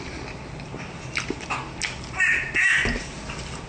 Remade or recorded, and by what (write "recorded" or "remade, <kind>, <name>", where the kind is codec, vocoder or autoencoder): recorded